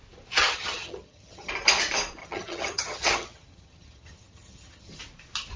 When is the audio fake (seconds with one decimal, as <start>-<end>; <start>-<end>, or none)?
0.4-1.5; 2.2-5.0